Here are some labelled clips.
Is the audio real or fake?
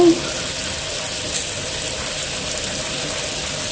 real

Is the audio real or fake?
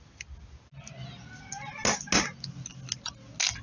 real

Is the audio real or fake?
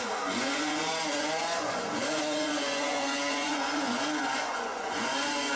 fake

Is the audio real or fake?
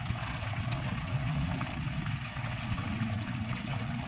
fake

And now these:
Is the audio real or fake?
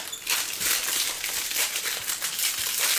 fake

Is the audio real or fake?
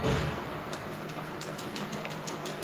fake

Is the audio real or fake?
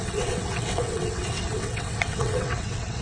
fake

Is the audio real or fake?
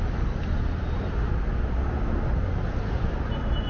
real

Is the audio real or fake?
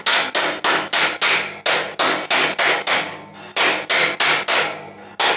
real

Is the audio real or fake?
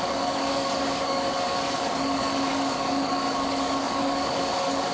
fake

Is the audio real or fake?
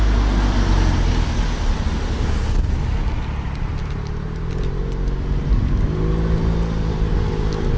real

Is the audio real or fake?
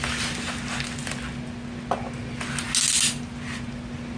real